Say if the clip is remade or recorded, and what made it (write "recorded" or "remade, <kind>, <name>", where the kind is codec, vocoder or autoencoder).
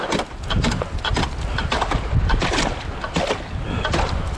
recorded